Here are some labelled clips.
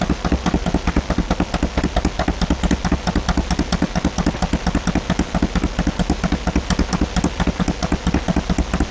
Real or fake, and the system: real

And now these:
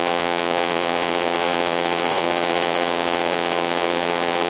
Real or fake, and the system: fake, vocoder, Vocos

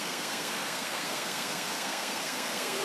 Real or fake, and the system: fake, codec, SNAC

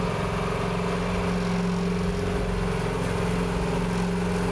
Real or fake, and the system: real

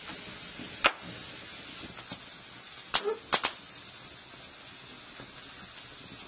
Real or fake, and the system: real